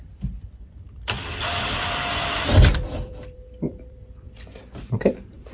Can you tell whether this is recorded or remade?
remade